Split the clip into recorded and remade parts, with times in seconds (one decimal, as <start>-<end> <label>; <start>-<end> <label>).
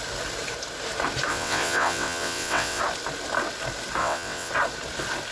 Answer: 0.0-1.3 recorded; 1.3-2.8 remade; 2.8-4.0 recorded; 4.0-4.5 remade; 4.5-5.3 recorded